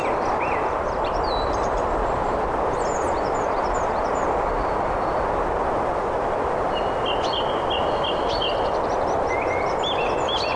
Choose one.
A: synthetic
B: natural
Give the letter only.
B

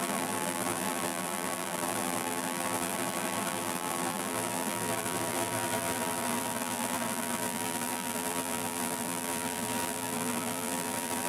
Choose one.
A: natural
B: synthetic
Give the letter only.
B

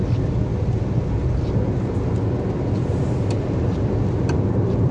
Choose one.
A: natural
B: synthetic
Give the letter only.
A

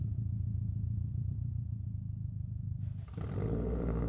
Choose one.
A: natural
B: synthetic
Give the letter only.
B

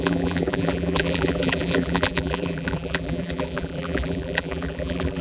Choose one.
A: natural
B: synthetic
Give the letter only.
B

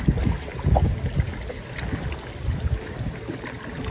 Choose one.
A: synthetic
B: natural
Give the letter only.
B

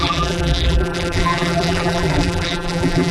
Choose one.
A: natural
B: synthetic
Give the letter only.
B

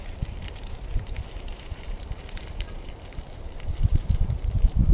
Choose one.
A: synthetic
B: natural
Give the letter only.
A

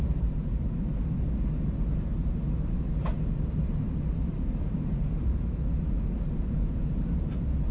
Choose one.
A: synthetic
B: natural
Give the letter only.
A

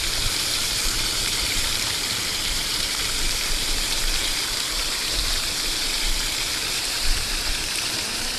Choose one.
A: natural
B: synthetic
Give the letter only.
B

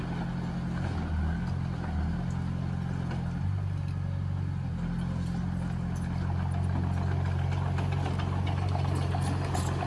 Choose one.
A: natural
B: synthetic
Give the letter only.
A